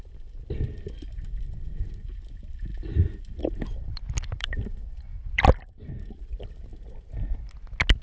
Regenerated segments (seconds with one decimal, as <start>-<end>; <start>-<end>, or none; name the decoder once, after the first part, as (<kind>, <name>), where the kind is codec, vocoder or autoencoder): 0.0-6.7 (vocoder, BigVGAN v2)